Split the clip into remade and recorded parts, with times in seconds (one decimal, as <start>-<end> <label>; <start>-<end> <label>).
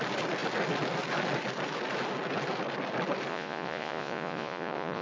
0.0-3.3 recorded; 3.3-5.0 remade